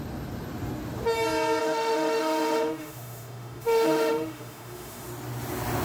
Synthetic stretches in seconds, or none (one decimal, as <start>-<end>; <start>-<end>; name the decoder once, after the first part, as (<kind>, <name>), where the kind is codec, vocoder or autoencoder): 1.6-5.1 (autoencoder, DAC-VAE)